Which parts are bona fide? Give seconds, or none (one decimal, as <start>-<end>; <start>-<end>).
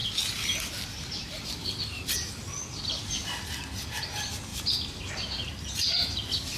0.0-6.6